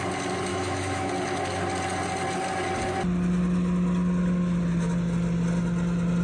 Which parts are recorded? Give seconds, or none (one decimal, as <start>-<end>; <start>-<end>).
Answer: 0.0-0.5; 1.1-6.2